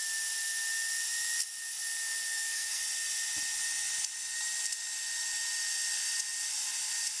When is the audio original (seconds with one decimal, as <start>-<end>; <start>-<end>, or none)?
0.0-2.3; 2.8-7.2